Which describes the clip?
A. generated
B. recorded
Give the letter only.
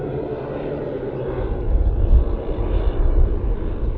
B